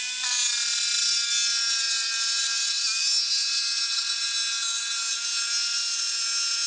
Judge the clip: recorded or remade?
recorded